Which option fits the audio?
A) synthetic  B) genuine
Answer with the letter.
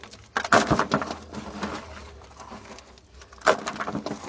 B